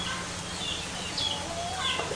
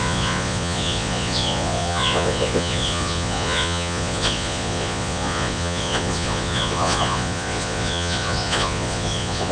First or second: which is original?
first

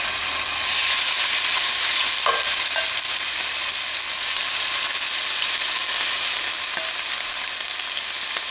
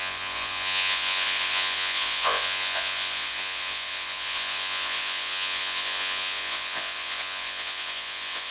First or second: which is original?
first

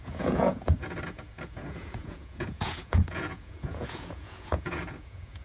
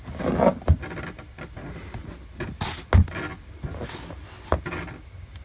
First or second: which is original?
second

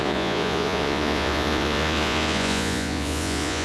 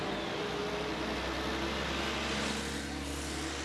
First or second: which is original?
second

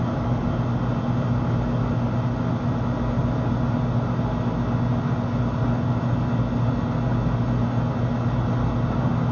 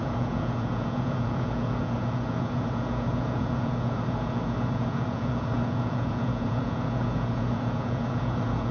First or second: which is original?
first